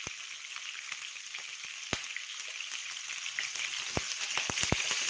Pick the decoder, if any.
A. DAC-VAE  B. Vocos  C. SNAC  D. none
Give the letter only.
D